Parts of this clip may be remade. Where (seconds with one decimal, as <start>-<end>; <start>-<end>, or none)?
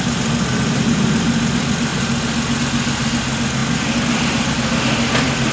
none